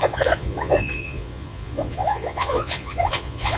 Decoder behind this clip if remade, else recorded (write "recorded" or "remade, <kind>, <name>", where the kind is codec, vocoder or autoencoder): remade, vocoder, Vocos